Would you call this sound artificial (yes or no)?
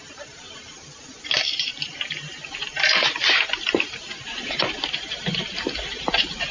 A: yes